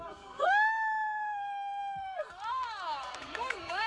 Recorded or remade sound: remade